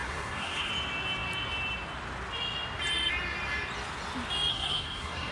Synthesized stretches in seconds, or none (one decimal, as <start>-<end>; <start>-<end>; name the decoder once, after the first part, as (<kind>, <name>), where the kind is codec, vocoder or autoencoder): 0.0-0.7 (codec, SNAC); 4.5-5.3